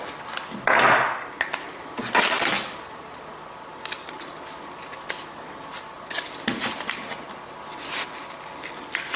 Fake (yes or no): no